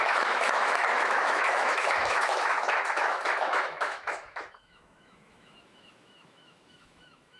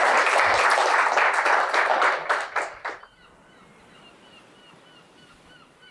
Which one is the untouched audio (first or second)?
second